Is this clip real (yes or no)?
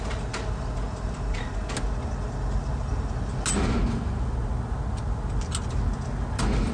yes